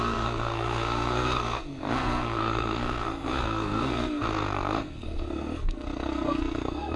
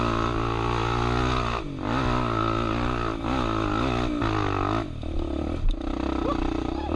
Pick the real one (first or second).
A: second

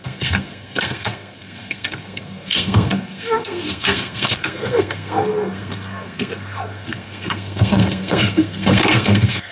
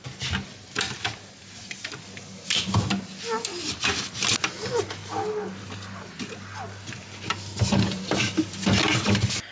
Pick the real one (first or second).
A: second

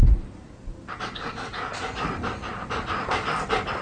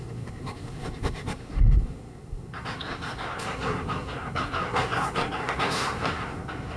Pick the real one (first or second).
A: first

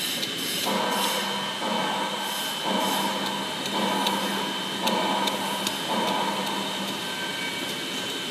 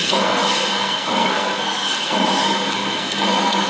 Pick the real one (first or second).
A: first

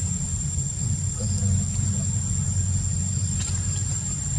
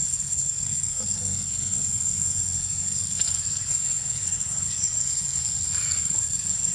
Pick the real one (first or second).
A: first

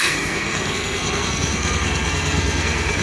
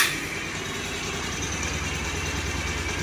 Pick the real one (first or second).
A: second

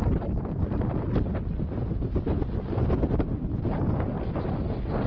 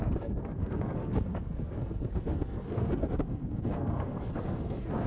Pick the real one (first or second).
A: first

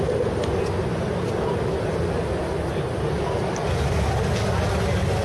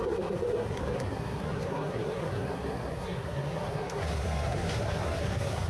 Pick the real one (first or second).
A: first